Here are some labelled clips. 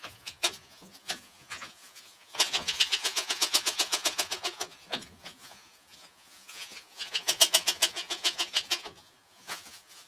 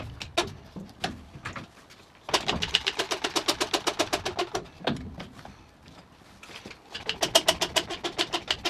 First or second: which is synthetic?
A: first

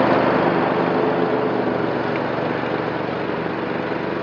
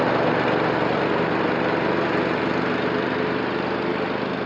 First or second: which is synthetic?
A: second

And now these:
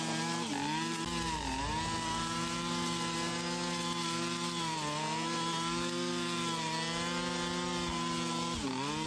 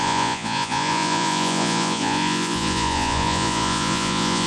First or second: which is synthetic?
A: second